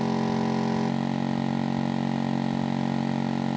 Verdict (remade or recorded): recorded